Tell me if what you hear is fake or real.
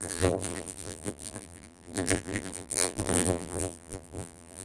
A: fake